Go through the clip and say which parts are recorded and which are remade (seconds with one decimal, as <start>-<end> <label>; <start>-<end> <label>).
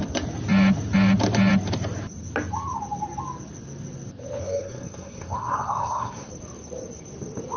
0.0-4.4 recorded; 4.4-6.3 remade; 6.3-7.6 recorded